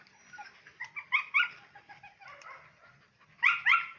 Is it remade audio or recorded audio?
remade